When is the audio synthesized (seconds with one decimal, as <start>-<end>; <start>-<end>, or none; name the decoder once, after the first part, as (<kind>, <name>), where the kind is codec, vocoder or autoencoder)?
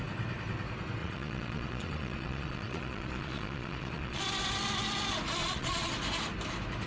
1.0-4.2 (vocoder, Vocos); 5.4-5.9